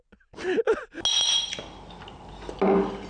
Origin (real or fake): real